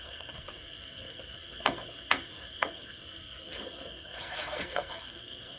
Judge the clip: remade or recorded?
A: remade